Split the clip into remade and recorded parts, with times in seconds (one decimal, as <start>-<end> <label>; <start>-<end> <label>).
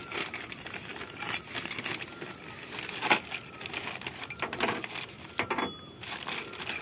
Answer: 0.0-6.8 recorded